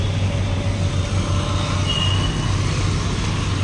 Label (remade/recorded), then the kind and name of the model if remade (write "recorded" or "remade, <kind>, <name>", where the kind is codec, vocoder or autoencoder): recorded